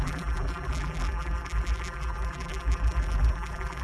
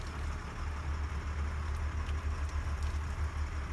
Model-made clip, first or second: first